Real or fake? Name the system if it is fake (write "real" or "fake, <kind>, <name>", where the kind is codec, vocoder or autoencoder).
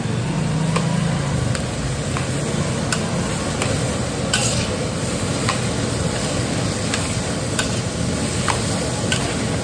real